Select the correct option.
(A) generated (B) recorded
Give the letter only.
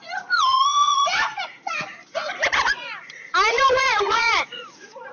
A